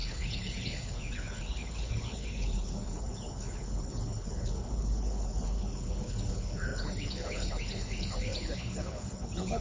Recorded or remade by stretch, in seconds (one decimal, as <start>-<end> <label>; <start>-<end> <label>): 0.0-9.6 remade